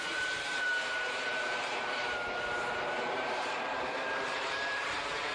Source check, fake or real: fake